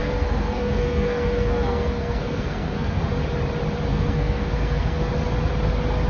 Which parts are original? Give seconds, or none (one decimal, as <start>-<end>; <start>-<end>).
3.0-3.9; 5.1-6.1